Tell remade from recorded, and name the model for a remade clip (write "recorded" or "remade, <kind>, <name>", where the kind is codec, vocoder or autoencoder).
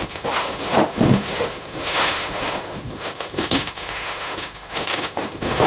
remade, autoencoder, DAC-VAE